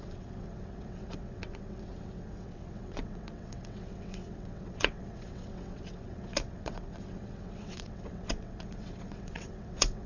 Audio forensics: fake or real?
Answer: fake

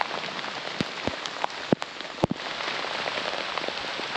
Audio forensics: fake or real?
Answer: real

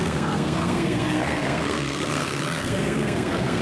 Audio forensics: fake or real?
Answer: fake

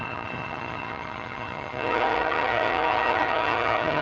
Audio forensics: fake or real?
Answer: fake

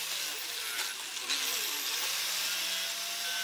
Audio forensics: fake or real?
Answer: real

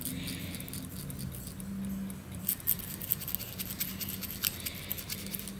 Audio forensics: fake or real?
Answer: real